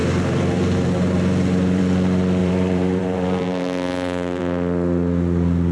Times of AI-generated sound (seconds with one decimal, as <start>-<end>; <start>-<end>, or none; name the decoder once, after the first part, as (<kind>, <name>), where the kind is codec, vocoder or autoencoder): 0.0-1.8 (vocoder, BigVGAN v2); 2.4-4.4